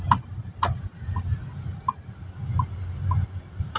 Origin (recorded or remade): recorded